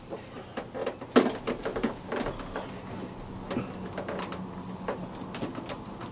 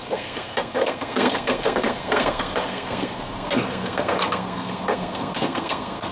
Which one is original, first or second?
first